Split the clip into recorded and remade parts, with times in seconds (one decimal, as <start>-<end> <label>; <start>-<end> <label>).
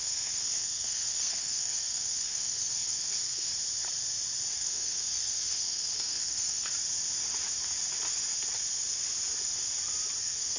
0.0-3.5 remade; 3.5-4.5 recorded; 4.5-6.7 remade; 6.7-10.2 recorded; 10.2-10.6 remade